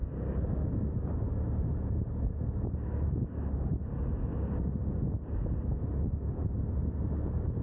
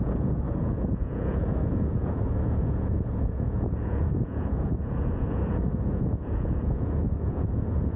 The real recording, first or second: first